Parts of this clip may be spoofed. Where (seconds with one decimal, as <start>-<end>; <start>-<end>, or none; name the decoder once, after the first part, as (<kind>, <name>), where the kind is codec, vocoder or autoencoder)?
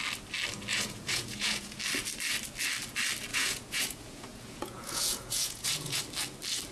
0.7-1.8 (vocoder, Vocos); 3.3-6.0